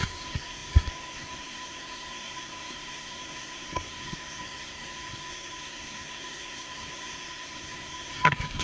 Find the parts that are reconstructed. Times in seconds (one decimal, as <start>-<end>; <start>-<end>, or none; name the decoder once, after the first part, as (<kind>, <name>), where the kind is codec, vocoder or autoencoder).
0.0-8.6 (codec, SNAC)